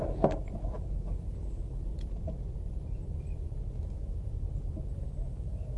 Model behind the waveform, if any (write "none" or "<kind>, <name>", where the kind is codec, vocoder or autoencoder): none